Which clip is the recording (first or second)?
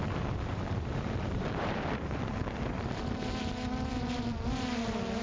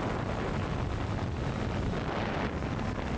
second